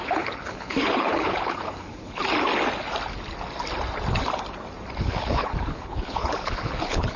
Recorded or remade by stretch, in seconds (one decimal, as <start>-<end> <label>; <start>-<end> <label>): 0.0-2.2 remade; 2.2-5.0 recorded; 5.0-7.2 remade